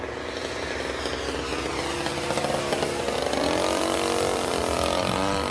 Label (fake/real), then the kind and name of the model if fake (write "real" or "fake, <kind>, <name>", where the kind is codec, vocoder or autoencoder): real